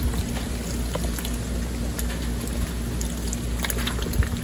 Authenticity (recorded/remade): recorded